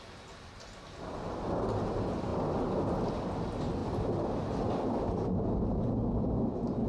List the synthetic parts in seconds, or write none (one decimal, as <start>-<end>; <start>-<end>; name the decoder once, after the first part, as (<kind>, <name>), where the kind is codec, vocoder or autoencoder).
2.3-3.1 (vocoder, BigVGAN v2); 3.8-6.9